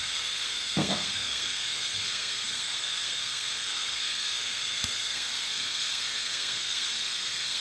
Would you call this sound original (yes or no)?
no